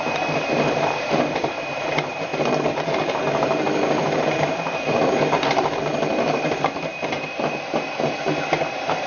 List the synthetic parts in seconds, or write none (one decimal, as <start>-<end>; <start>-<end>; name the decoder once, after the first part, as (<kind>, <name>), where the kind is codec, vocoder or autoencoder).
0.0-9.1 (vocoder, BigVGAN v2)